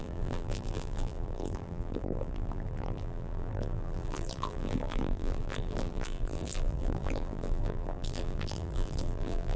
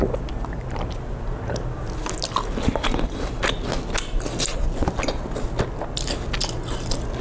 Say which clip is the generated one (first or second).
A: first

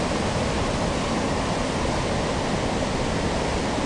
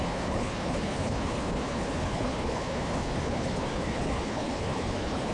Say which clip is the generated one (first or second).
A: second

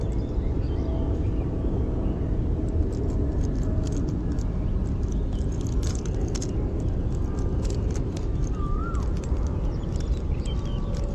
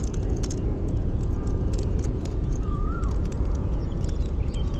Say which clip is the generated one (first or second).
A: second